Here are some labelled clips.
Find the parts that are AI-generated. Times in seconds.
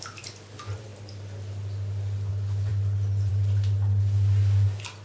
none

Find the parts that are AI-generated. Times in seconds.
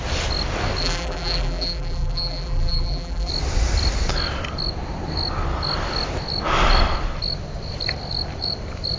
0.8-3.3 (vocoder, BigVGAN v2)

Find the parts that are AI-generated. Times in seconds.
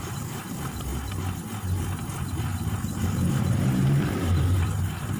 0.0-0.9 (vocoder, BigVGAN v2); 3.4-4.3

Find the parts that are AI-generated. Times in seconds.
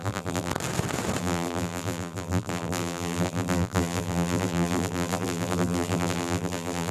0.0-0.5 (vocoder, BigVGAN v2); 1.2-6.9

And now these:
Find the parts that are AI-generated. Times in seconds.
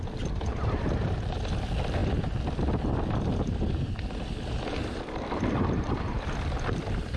0.0-2.0 (vocoder, BigVGAN v2); 4.1-7.2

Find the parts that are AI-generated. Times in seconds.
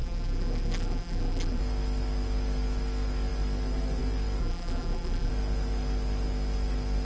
0.0-1.6 (vocoder, BigVGAN v2); 4.4-5.3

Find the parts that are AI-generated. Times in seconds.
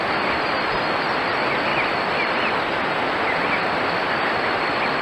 none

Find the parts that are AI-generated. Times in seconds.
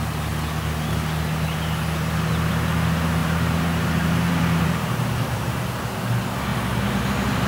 3.2-5.6 (vocoder, BigVGAN v2)